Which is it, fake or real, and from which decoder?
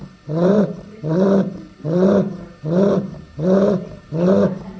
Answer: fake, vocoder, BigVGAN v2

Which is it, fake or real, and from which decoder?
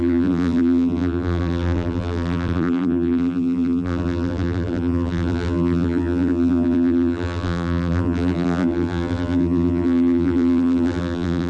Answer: fake, vocoder, BigVGAN v2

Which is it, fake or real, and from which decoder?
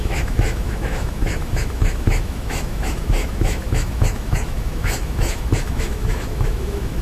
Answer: fake, autoencoder, DAC-VAE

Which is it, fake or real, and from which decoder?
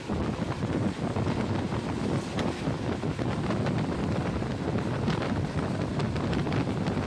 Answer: real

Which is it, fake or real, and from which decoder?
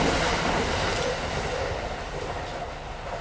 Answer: real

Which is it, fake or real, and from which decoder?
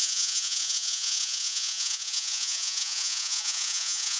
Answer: fake, vocoder, Vocos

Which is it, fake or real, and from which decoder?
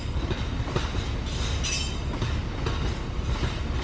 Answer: real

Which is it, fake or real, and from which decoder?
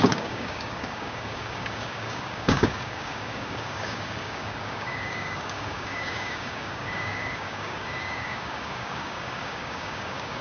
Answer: fake, codec, DAC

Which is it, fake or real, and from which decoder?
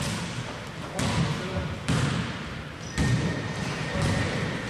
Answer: real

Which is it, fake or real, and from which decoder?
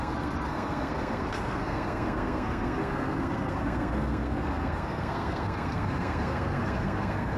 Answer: fake, codec, SNAC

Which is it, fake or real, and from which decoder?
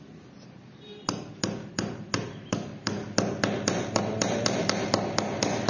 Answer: real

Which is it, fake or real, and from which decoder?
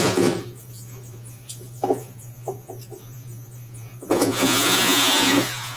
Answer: fake, vocoder, Vocos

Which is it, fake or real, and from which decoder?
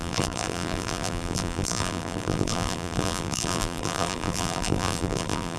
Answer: fake, vocoder, BigVGAN v2